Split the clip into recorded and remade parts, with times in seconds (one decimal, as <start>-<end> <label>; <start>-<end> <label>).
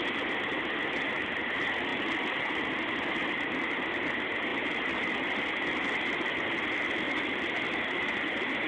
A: 0.0-8.7 recorded